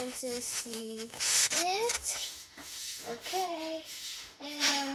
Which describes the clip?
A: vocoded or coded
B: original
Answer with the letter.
A